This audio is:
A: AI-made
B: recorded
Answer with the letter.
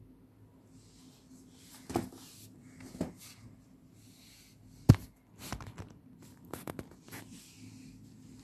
B